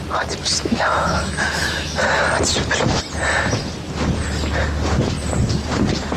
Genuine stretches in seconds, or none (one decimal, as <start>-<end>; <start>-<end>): 0.0-0.4; 2.2-6.2